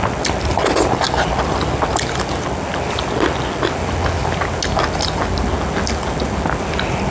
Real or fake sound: real